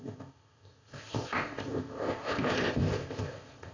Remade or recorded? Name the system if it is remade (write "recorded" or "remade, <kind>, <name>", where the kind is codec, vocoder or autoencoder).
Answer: remade, codec, ZipCodec